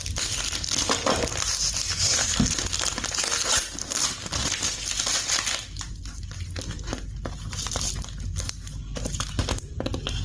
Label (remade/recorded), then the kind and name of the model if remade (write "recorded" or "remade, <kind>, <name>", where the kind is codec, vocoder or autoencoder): recorded